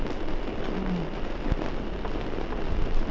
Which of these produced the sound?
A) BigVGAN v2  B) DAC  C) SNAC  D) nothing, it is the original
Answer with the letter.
D